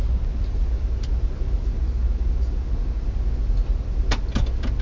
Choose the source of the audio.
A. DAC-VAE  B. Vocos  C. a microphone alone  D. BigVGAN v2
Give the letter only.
C